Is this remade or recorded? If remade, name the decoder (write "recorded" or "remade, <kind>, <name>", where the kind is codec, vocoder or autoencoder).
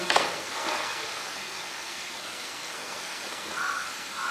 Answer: remade, codec, SNAC